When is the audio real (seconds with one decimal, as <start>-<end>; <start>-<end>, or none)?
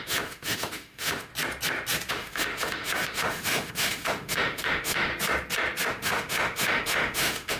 1.3-2.1; 5.1-5.9